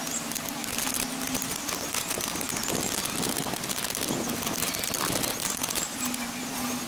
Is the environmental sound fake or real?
real